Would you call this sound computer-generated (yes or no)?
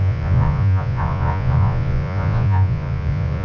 yes